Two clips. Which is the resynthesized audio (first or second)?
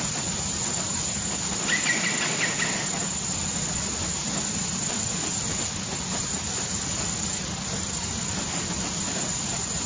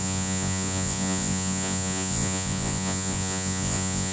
second